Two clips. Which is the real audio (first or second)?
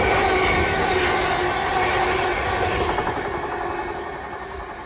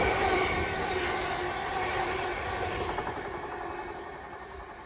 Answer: first